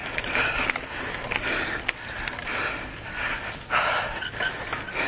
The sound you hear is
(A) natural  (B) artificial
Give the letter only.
A